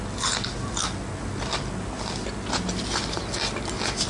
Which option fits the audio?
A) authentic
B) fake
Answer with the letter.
A